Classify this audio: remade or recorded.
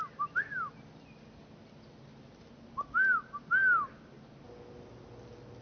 recorded